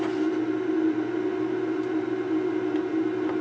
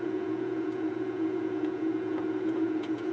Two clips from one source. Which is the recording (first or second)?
first